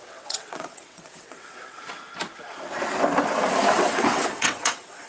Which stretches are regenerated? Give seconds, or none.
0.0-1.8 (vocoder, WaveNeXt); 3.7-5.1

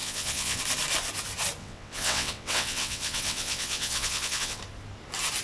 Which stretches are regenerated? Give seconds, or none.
0.0-0.6 (vocoder, WaveNeXt); 1.6-4.6

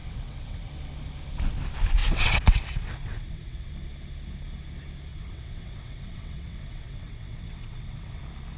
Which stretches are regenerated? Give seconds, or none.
0.0-0.7 (vocoder, WaveNeXt); 2.0-3.7; 5.1-8.2

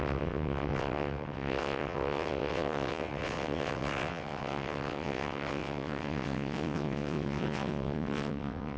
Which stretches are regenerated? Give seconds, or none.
0.0-8.8 (vocoder, WaveNeXt)

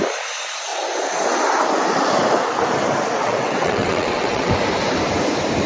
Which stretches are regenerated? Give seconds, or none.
3.2-4.5 (vocoder, WaveNeXt)

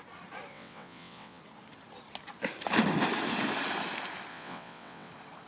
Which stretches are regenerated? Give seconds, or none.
0.5-1.4 (vocoder, WaveNeXt); 4.3-5.1

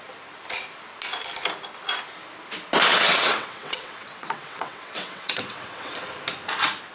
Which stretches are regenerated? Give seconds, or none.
2.9-5.9 (vocoder, WaveNeXt)